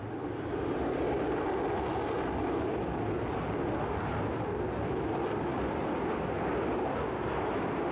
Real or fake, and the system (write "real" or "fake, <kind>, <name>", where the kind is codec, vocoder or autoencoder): real